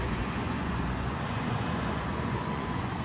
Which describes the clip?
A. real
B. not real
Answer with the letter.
B